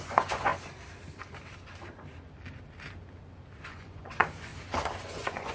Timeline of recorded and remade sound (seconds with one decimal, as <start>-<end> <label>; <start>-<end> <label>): 0.0-0.5 remade; 0.5-3.7 recorded; 3.7-4.5 remade; 4.5-5.0 recorded; 5.0-5.5 remade